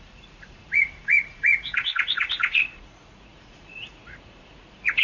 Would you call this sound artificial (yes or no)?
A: yes